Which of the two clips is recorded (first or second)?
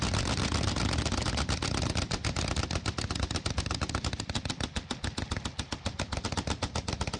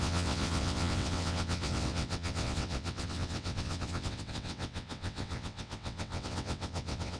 first